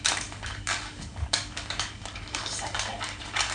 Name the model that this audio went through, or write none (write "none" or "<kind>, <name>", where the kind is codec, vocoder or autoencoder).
codec, DAC